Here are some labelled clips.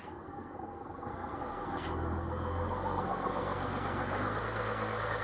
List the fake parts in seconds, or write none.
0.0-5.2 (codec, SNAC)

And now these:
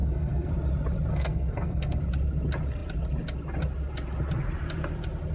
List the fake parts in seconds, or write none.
0.0-0.5 (codec, SNAC); 1.1-2.0

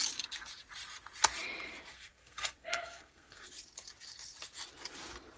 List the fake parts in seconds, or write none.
1.9-3.5 (codec, SNAC)

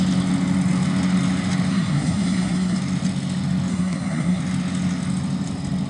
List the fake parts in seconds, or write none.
1.7-2.8 (codec, SNAC); 3.7-4.4

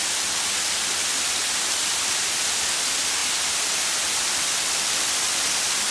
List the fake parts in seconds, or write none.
none

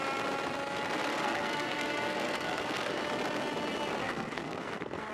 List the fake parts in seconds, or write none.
1.1-3.0 (codec, SNAC); 4.0-5.1